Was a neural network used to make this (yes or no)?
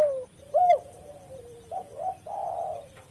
yes